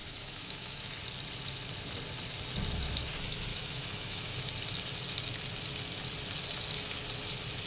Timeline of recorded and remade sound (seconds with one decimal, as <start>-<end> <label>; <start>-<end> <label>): 0.0-1.0 remade; 1.0-3.5 recorded; 3.5-4.5 remade; 4.5-7.7 recorded